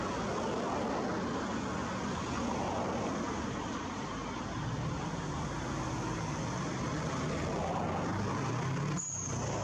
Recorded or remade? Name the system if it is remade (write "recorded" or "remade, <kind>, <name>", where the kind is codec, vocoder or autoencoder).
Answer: recorded